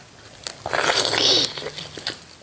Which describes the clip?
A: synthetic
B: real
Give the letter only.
B